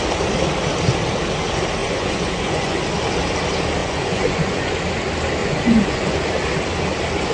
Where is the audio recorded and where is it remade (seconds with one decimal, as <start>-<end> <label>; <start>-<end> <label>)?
0.0-1.8 recorded; 1.8-2.8 remade; 2.8-3.8 recorded; 3.8-4.7 remade; 4.7-5.4 recorded; 5.4-6.2 remade; 6.2-7.3 recorded